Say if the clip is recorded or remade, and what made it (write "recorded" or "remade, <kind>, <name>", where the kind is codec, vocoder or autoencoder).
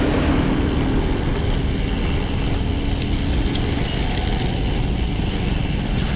recorded